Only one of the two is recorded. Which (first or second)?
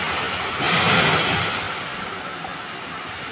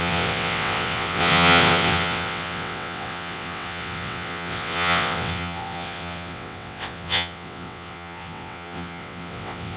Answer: first